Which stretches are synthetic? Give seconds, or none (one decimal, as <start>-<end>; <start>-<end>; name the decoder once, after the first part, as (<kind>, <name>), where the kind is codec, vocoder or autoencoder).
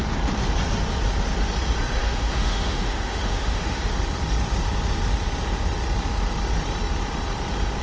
2.0-3.9 (autoencoder, DAC-VAE)